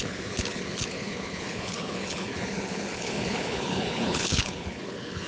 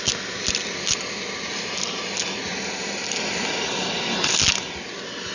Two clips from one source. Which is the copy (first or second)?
first